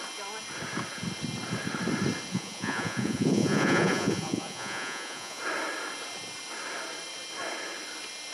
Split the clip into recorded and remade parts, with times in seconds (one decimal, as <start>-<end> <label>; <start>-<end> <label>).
0.0-2.3 recorded; 2.3-5.4 remade; 5.4-8.3 recorded